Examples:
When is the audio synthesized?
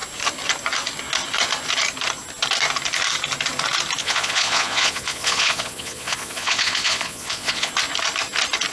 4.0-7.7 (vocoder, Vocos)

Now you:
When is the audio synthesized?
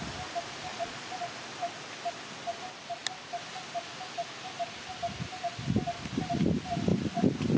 0.7-1.3 (vocoder, Vocos)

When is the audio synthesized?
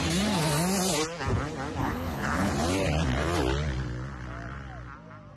1.8-2.5 (codec, HILCodec)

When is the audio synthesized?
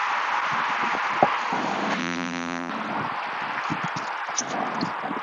2.0-2.7 (vocoder, BigVGAN v2)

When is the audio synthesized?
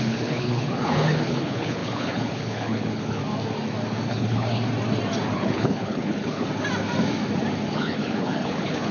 0.0-3.2 (codec, HILCodec); 4.1-4.6; 5.3-6.5; 7.7-8.9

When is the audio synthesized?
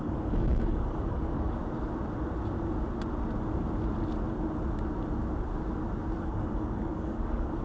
0.0-1.6 (codec, DAC); 6.2-7.6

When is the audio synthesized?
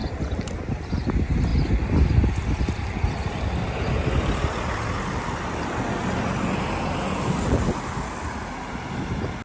none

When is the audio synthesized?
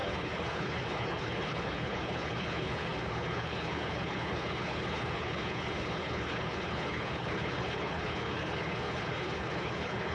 0.0-10.1 (codec, HILCodec)